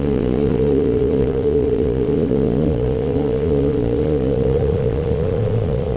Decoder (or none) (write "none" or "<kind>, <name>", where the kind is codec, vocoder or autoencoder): vocoder, Vocos